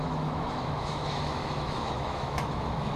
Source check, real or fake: fake